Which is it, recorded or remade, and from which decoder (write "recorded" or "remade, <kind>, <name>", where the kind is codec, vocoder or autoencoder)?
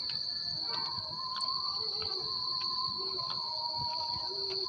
recorded